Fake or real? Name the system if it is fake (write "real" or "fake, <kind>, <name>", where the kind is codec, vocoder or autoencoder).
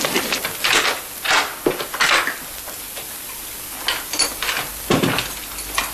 real